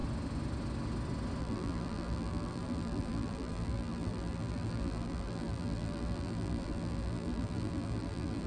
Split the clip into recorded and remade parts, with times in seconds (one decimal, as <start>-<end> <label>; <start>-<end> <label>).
0.0-1.4 recorded; 1.4-8.5 remade